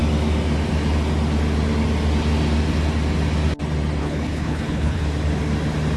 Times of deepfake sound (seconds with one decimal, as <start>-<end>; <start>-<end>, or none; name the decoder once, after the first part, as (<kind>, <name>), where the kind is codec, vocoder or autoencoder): 4.0-5.0 (codec, HILCodec)